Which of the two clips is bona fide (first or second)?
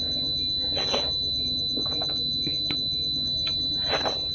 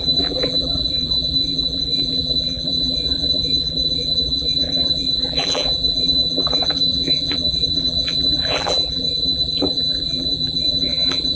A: first